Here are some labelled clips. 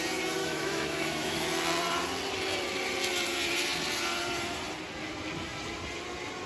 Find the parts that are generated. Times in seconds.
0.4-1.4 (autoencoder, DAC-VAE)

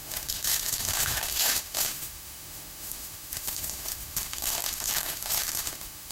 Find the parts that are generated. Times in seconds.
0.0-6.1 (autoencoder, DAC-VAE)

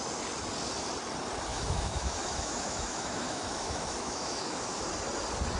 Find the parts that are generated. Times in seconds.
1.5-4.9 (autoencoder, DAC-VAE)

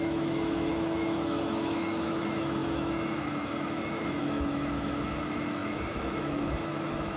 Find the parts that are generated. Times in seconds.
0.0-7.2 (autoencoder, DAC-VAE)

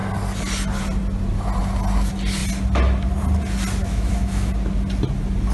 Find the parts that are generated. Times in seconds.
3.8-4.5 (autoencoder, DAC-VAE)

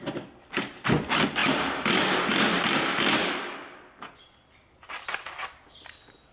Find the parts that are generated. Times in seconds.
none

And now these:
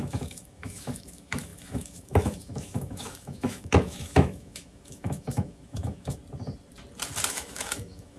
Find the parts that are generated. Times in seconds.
0.0-6.2 (autoencoder, DAC-VAE); 7.3-8.2

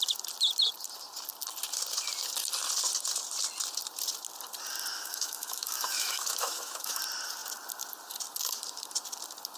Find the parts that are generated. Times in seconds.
4.9-7.0 (autoencoder, DAC-VAE)